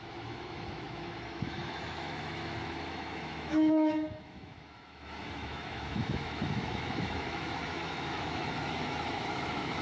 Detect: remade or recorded remade